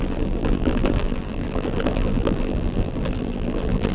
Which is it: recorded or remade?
remade